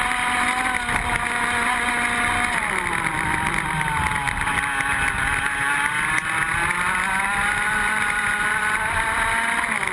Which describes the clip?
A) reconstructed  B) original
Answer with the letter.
B